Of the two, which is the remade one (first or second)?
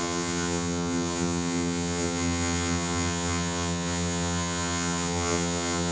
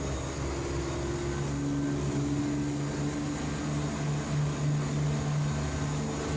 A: first